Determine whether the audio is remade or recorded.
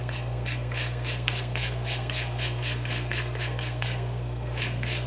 remade